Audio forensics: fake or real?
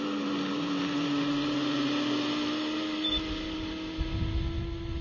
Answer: real